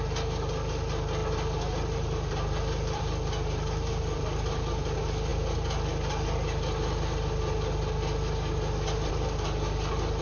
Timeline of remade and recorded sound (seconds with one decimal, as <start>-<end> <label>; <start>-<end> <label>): 0.0-10.2 recorded